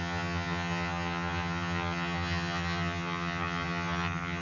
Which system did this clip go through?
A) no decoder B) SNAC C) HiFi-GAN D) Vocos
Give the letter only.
C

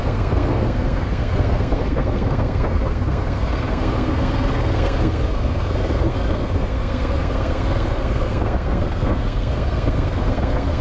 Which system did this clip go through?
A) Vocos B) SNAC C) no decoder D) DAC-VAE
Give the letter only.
B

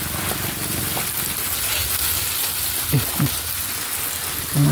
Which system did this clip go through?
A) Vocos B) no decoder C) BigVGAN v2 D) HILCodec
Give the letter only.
B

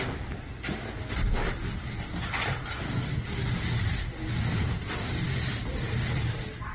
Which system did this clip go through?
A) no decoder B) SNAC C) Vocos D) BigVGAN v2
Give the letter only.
A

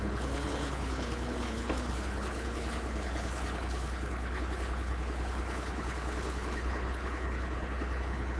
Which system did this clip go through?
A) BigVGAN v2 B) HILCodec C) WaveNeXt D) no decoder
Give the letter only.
B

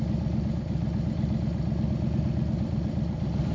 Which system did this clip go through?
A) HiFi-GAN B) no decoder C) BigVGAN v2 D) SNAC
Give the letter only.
B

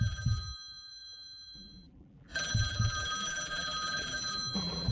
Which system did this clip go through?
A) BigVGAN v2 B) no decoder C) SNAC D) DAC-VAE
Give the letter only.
A